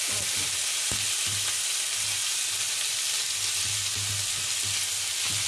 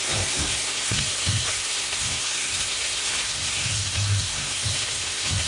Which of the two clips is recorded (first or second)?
first